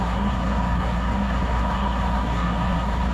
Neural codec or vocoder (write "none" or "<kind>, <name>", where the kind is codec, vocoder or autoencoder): codec, SNAC